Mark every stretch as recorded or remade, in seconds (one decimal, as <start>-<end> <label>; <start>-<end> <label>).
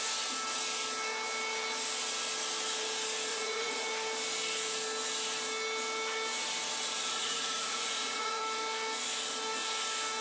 0.0-3.3 recorded; 3.3-3.9 remade; 3.9-7.1 recorded; 7.1-8.4 remade; 8.4-10.2 recorded